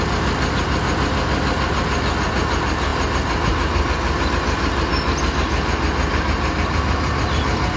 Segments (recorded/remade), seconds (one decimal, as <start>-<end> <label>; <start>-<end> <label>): 0.0-7.8 recorded